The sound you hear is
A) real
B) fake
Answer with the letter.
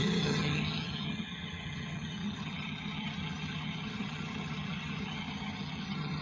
B